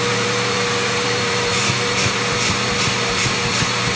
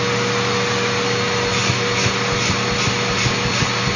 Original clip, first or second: second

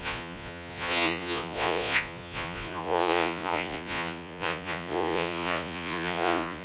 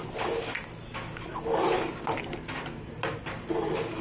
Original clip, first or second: second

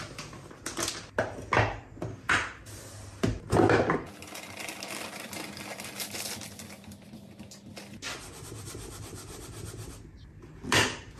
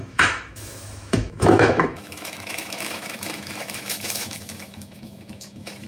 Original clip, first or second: first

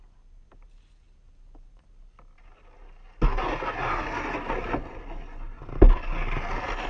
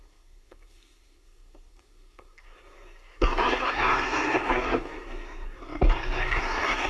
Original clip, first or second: first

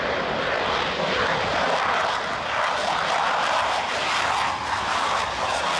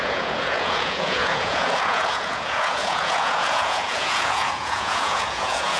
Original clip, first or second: first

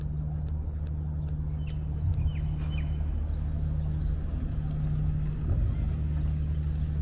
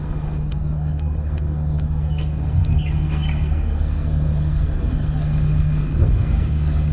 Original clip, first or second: first